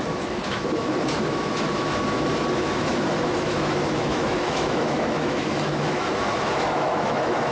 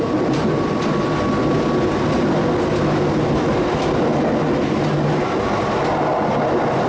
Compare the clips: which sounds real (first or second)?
second